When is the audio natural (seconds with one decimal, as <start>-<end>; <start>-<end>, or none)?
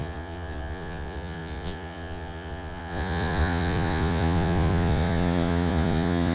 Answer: none